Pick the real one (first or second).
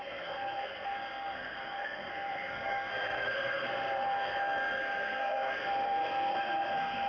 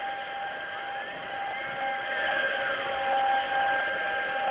second